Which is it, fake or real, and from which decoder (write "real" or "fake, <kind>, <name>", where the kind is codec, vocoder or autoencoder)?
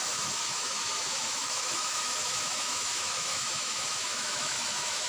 fake, autoencoder, DAC-VAE